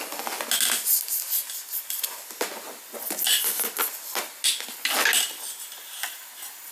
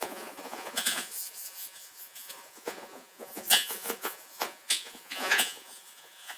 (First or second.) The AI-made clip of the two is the second